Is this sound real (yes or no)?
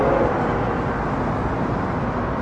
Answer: yes